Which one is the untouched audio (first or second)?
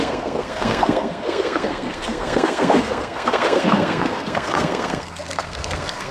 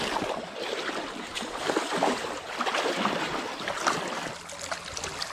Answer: second